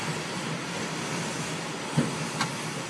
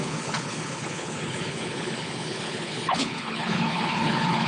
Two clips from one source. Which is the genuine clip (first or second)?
first